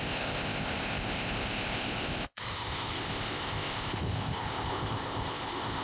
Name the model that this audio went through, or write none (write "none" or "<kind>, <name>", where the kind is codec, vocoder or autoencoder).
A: codec, ZipCodec